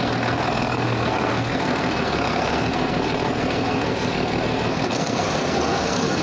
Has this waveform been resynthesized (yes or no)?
yes